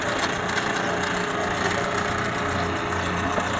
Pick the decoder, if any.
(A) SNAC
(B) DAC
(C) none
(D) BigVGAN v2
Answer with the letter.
C